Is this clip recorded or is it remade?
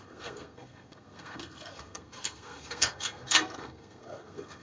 remade